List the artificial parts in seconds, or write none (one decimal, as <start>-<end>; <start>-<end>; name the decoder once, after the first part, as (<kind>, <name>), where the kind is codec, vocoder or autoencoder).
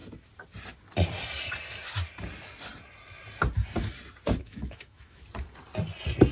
4.4-5.2 (autoencoder, DAC-VAE)